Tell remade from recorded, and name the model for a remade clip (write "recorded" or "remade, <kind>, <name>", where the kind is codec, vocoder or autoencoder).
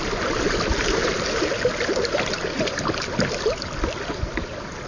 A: recorded